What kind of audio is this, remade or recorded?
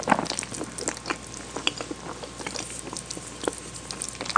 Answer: recorded